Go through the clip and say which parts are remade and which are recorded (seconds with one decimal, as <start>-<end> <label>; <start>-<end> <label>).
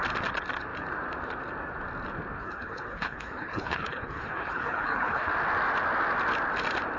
0.0-2.4 recorded; 2.4-5.3 remade; 5.3-7.0 recorded